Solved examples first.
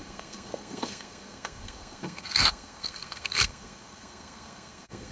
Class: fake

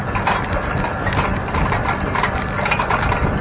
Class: real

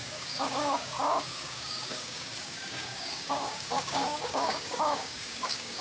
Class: fake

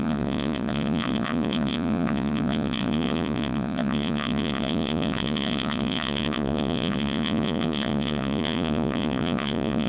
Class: fake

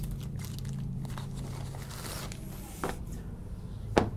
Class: real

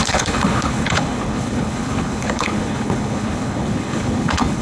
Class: fake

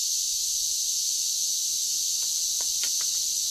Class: real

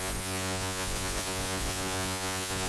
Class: fake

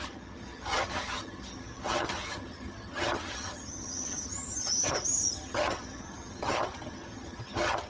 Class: fake